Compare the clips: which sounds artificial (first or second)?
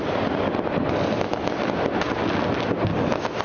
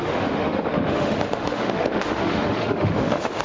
second